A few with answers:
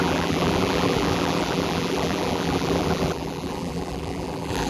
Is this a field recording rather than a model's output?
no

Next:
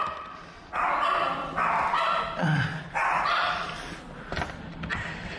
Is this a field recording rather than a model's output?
no